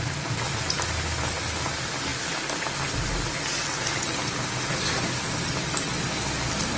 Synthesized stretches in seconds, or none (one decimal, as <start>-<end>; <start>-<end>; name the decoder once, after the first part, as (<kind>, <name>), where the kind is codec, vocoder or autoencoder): none